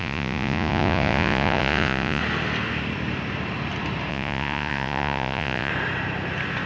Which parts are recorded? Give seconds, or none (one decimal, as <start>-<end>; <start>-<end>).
2.2-4.1; 5.7-6.7